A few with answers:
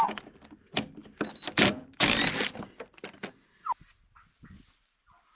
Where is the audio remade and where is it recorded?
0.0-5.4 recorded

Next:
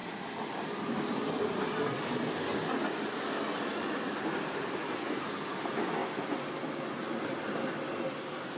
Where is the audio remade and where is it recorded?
0.0-8.6 recorded

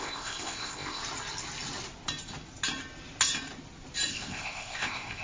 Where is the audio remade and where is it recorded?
0.0-1.0 remade; 1.0-4.1 recorded; 4.1-5.2 remade

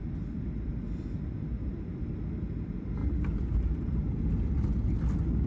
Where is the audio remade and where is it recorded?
0.0-5.5 recorded

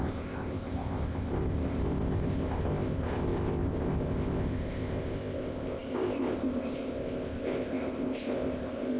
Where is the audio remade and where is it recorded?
0.0-9.0 remade